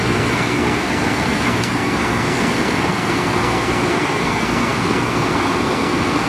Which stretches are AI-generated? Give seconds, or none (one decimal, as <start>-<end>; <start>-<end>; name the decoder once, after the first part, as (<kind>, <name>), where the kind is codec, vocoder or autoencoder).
0.0-6.3 (codec, SNAC)